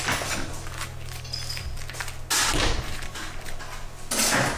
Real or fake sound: real